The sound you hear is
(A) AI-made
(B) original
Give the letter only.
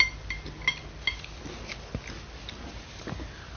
B